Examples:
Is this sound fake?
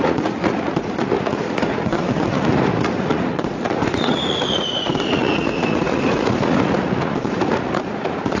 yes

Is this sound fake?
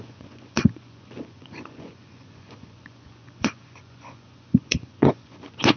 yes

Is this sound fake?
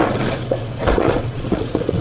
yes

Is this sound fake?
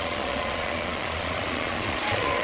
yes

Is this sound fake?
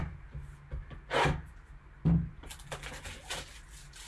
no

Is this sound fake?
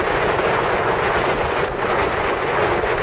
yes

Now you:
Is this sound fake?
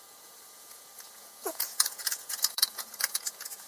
yes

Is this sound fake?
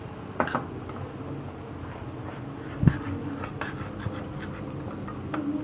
no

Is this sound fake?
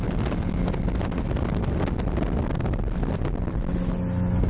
no